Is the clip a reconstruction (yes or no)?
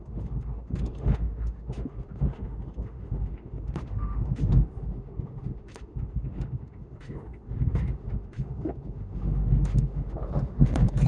yes